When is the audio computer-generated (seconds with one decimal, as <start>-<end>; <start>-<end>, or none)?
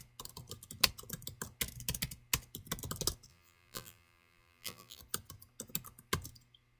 3.3-5.0